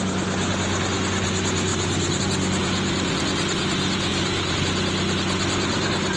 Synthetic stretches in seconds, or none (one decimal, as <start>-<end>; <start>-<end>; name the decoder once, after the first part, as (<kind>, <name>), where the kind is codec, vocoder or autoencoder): 1.7-2.2 (vocoder, BigVGAN v2); 2.6-3.2; 4.1-4.6